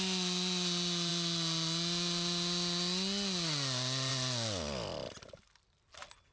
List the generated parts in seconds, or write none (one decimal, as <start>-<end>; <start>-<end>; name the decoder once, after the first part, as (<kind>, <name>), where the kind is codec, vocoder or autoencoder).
none